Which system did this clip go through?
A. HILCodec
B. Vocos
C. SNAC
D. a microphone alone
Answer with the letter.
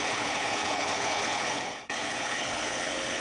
A